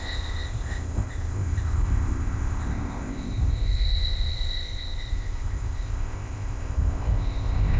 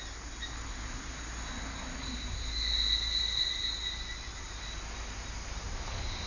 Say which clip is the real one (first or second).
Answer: second